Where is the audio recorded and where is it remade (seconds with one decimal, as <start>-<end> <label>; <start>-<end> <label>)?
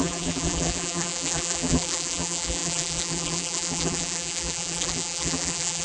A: 0.0-5.8 remade